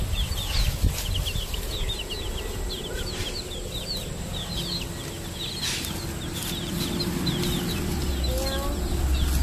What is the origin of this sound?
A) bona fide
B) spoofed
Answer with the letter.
A